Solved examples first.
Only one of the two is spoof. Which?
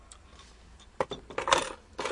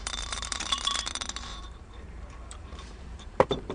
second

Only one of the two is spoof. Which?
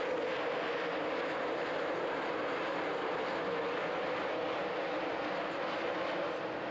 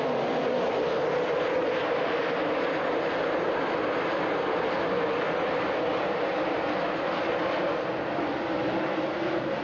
second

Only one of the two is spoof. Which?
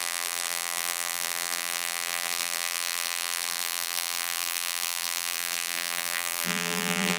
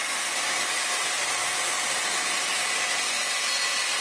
first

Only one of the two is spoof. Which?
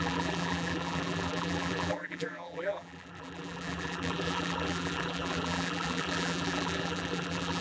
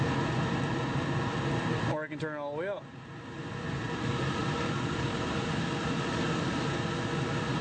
first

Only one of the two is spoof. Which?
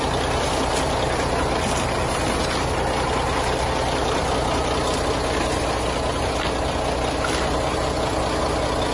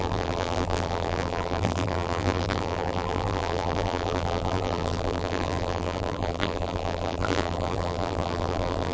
second